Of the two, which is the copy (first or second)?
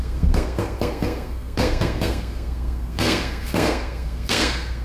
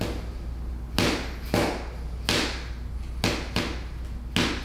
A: first